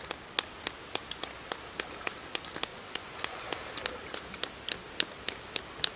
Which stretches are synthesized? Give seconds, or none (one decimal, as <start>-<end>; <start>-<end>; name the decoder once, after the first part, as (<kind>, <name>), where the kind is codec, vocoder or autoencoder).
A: 2.7-3.6 (vocoder, Vocos)

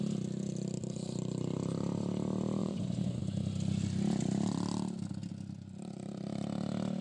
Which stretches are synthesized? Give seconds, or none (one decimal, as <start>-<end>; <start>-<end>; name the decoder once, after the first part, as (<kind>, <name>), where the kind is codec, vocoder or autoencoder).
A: 2.6-3.2 (vocoder, Vocos)

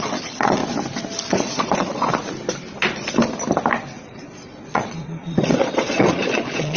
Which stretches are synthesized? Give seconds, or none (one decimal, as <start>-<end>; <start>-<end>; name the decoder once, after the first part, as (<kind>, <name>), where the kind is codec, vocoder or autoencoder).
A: 0.0-0.6 (vocoder, Vocos); 1.3-2.1; 4.1-6.8

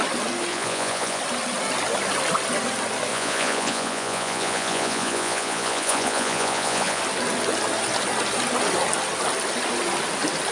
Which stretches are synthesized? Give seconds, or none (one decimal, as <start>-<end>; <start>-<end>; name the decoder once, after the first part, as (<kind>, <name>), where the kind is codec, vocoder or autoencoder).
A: 0.5-1.2 (vocoder, Vocos); 3.1-7.0